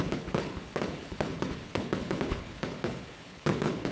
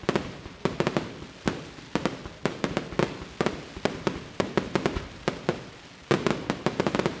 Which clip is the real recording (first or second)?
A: second